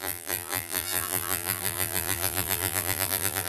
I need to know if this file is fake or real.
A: fake